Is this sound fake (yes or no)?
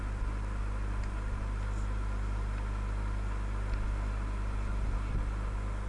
no